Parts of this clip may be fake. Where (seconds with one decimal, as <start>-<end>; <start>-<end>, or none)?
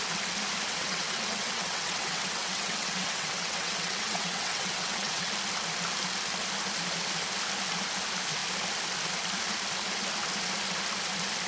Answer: 0.7-5.3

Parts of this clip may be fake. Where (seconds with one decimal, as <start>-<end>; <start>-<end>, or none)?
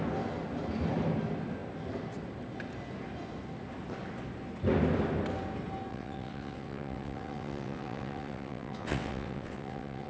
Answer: 5.9-10.1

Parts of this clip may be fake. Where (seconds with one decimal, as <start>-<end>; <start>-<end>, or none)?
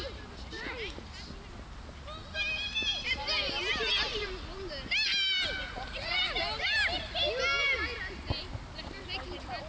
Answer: none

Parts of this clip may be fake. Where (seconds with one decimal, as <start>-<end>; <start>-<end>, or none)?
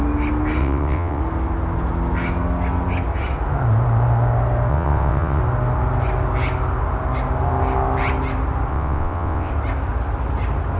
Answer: 0.6-1.2; 4.7-5.4; 8.7-9.5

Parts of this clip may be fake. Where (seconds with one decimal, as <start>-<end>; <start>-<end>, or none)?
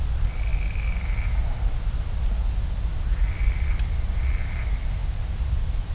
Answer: none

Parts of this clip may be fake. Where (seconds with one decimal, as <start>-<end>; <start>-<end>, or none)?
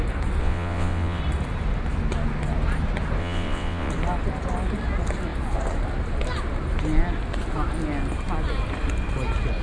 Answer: 0.4-1.2; 3.2-3.9